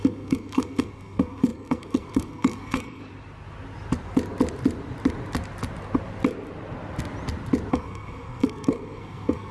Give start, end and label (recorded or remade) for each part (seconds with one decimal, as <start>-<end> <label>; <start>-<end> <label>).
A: 0.0-3.0 remade; 3.0-7.7 recorded; 7.7-9.5 remade